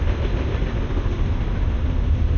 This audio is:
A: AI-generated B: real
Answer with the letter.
B